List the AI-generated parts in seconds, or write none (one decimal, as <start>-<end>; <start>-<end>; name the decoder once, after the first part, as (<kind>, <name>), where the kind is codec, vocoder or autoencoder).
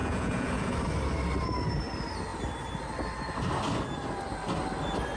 0.0-0.7 (vocoder, Vocos)